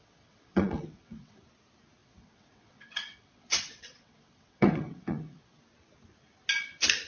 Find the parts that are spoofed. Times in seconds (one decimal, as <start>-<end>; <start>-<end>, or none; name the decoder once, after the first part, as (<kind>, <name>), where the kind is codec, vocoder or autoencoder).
0.0-1.4 (vocoder, WaveNeXt); 2.0-5.6